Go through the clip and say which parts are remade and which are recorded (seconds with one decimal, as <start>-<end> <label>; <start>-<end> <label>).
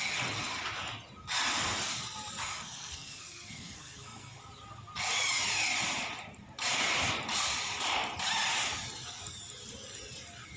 0.0-2.5 recorded; 2.5-4.4 remade; 4.4-10.6 recorded